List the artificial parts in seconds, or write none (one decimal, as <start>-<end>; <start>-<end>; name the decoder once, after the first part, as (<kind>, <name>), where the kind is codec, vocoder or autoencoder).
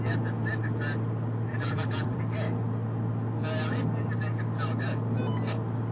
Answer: 1.5-2.2 (vocoder, BigVGAN v2)